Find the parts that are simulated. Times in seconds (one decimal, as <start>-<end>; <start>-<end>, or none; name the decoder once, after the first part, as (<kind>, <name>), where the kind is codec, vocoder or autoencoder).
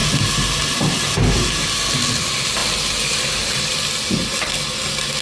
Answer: 1.7-2.6 (vocoder, BigVGAN v2)